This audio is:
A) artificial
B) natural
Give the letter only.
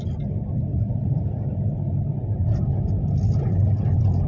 B